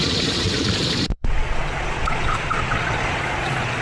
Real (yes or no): no